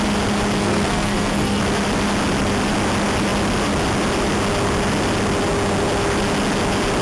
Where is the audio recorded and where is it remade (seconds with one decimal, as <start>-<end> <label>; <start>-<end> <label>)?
0.0-0.6 recorded; 0.6-1.6 remade; 1.6-7.0 recorded